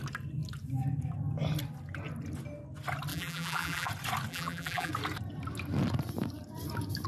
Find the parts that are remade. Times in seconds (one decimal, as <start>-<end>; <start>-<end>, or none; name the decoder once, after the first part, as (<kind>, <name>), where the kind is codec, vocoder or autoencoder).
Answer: 3.1-3.9 (vocoder, BigVGAN v2); 4.3-4.9